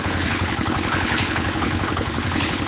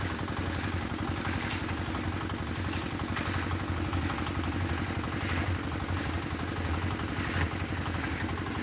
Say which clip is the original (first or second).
second